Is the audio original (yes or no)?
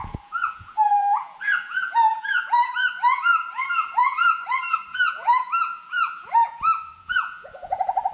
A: no